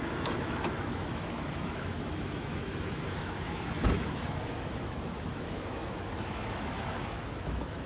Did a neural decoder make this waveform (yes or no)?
yes